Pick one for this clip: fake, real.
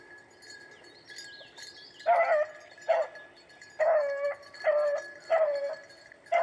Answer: real